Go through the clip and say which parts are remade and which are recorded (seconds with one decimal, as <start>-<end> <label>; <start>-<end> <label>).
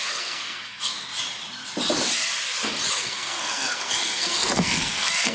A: 0.0-1.1 remade; 1.1-2.9 recorded; 2.9-5.3 remade